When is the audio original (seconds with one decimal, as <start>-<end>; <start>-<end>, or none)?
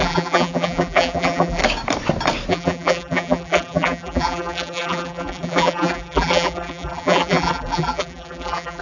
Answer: 1.6-2.5